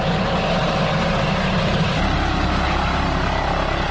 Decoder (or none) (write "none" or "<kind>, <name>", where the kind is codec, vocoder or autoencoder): none